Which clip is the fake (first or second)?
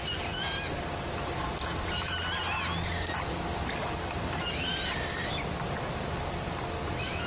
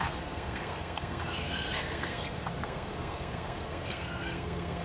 second